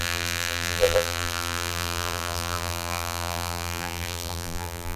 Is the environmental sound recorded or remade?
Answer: remade